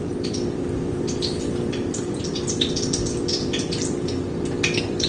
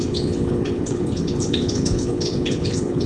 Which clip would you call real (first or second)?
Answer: first